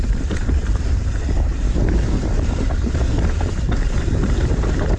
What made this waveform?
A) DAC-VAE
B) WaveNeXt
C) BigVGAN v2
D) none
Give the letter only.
C